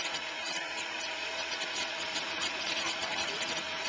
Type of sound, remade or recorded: remade